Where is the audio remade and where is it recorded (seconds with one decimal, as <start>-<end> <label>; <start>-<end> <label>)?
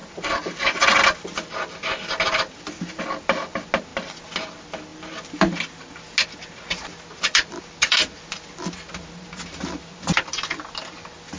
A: 0.0-11.4 recorded